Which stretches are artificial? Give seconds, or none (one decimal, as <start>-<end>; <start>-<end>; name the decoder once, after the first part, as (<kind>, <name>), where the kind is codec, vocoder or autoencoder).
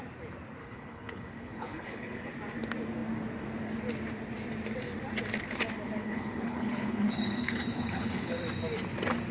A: 0.6-2.3 (codec, HILCodec); 6.0-8.4